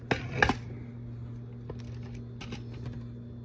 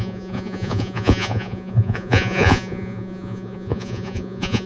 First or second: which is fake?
second